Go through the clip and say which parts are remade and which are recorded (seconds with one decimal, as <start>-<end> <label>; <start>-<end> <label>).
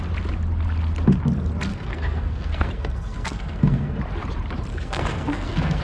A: 0.0-1.7 recorded; 1.7-4.0 remade; 4.0-4.7 recorded; 4.7-5.8 remade